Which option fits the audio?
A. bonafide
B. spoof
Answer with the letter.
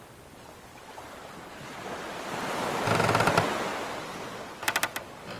A